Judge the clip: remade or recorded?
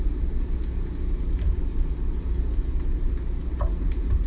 recorded